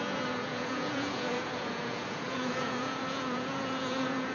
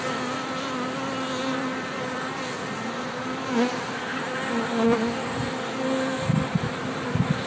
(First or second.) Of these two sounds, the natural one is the second